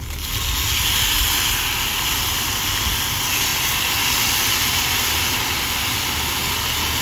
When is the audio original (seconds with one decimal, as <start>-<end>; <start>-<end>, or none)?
0.0-7.0